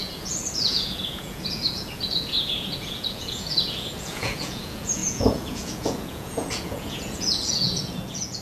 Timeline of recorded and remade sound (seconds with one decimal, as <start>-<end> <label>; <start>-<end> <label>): 0.0-8.4 remade